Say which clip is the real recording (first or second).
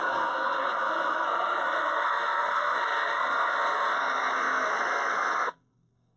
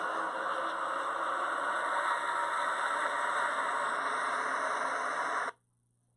second